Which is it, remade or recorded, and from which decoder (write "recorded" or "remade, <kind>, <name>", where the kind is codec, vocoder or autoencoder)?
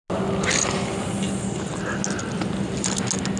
recorded